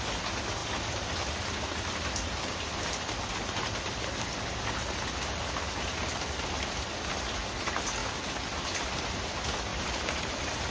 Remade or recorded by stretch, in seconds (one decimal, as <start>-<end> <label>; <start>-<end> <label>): 0.0-0.6 recorded; 0.6-3.3 remade; 3.3-9.7 recorded; 9.7-10.7 remade